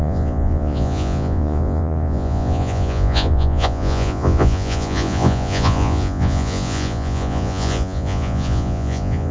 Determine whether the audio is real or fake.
fake